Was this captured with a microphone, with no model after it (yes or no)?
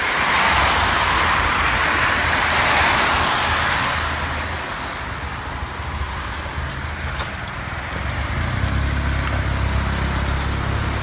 yes